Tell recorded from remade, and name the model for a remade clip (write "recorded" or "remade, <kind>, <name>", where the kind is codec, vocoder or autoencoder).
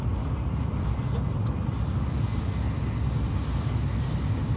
recorded